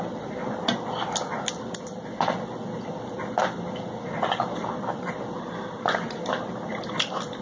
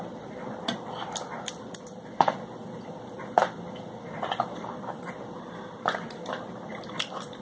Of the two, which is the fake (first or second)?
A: second